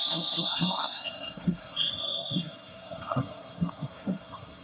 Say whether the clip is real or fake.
fake